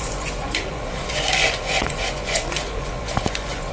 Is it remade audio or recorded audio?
remade